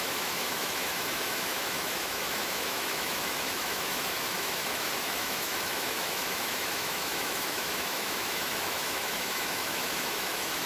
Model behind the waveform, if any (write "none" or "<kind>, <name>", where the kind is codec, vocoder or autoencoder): autoencoder, DAC-VAE